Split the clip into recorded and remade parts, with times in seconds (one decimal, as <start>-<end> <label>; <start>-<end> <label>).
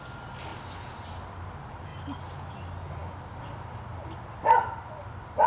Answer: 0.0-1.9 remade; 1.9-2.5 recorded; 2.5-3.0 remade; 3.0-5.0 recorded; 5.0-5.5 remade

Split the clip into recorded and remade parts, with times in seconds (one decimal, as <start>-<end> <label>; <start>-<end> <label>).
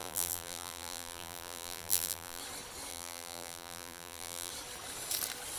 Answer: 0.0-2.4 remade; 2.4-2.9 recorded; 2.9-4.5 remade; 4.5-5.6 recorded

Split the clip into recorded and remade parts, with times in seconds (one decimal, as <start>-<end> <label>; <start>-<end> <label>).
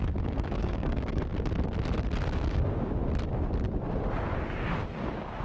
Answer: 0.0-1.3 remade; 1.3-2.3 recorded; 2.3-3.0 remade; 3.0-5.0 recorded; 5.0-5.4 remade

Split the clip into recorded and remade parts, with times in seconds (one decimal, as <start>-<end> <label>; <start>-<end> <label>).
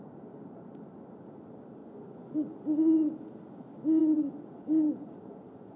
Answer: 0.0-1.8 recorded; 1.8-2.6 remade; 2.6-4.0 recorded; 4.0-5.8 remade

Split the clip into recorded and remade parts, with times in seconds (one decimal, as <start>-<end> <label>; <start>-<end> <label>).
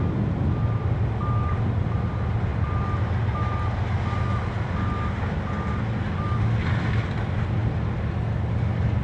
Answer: 0.0-9.0 recorded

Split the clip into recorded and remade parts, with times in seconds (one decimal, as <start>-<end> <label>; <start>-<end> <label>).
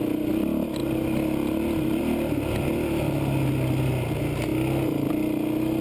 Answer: 0.0-5.8 recorded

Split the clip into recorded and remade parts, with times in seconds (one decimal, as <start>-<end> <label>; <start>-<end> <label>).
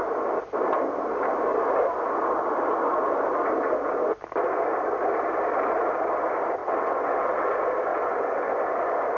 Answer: 0.0-6.6 recorded; 6.6-7.5 remade; 7.5-7.9 recorded; 7.9-8.5 remade; 8.5-9.2 recorded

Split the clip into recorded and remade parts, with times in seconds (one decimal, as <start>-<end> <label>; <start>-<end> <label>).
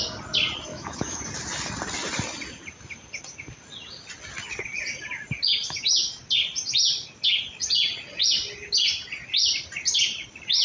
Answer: 0.0-0.7 recorded; 0.7-1.2 remade; 1.2-10.6 recorded